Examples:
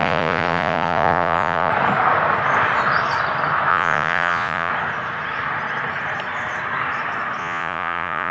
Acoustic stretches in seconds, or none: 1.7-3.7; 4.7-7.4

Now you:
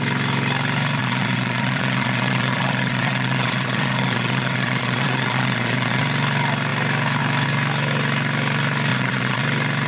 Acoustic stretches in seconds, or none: 0.0-1.0; 6.0-8.9; 9.4-9.9